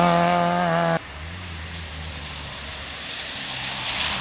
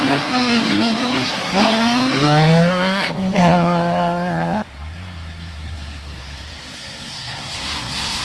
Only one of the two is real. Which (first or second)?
first